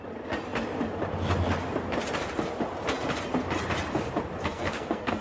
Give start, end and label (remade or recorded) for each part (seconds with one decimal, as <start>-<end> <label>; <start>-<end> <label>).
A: 0.0-4.4 recorded; 4.4-5.2 remade